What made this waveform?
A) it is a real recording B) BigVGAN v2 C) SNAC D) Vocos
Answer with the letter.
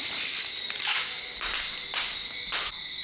A